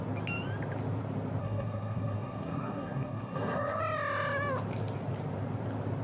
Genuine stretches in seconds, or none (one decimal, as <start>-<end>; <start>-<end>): 0.0-1.4; 3.8-6.0